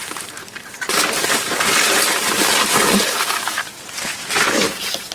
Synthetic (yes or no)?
yes